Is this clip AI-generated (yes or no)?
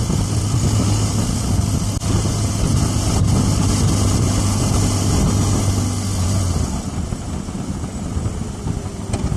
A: no